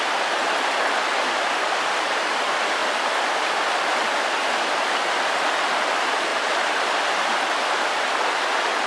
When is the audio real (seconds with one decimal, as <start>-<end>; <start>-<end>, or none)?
0.0-2.8; 4.2-8.9